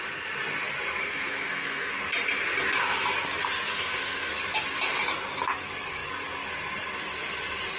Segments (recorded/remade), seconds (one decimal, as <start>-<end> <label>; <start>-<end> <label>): 0.0-1.0 recorded; 1.0-1.9 remade; 1.9-3.7 recorded; 3.7-4.3 remade; 4.3-7.8 recorded